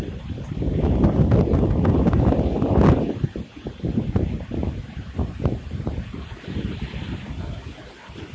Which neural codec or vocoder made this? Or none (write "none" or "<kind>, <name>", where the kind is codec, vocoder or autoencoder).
none